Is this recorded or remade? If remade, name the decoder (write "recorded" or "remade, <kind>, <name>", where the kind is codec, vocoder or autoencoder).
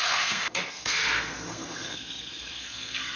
remade, codec, SNAC